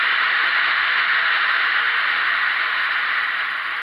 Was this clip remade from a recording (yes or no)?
no